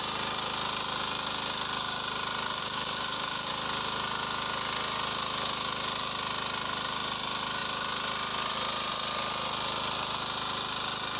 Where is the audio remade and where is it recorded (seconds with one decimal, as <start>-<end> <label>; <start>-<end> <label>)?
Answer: 0.0-2.6 recorded; 2.6-3.5 remade; 3.5-11.2 recorded